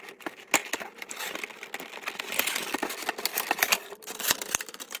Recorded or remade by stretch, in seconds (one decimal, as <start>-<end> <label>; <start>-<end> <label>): 0.0-3.3 recorded; 3.3-5.0 remade